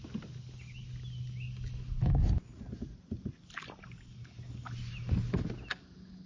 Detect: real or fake real